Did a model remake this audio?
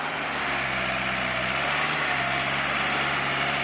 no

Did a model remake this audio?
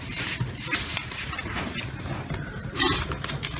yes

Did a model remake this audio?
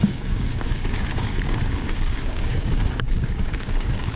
yes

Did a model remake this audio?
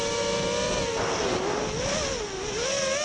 no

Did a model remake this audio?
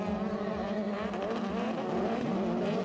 no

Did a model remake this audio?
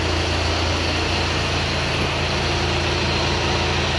no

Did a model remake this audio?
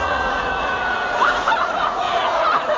yes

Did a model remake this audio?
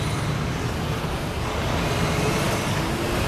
no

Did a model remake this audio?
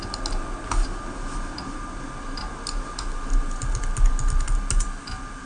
no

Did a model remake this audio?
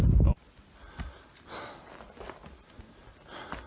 no